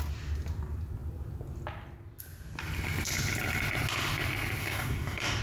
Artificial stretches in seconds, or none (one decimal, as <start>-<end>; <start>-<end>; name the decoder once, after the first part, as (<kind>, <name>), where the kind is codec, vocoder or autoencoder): 4.6-5.4 (codec, DAC)